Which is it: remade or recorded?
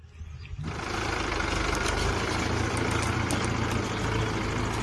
recorded